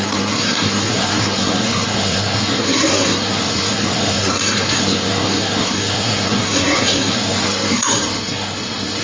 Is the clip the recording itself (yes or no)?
no